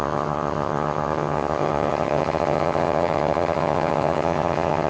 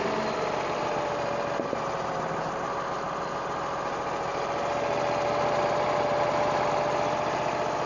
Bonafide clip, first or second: second